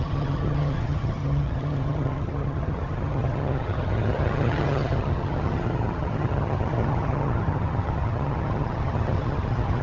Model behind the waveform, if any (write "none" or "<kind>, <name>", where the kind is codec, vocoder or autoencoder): vocoder, HiFi-GAN